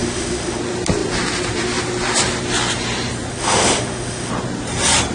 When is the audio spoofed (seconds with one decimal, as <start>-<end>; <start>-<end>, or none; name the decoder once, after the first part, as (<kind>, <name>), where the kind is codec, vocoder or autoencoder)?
0.0-0.6 (autoencoder, DAC-VAE); 3.3-4.3